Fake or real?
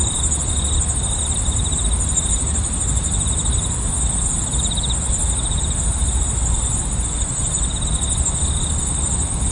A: real